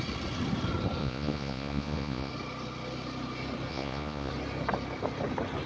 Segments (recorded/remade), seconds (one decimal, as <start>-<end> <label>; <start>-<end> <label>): 0.0-1.0 recorded; 1.0-2.3 remade; 2.3-3.7 recorded; 3.7-4.3 remade; 4.3-5.7 recorded